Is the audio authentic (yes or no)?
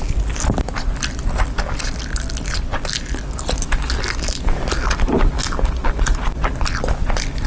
yes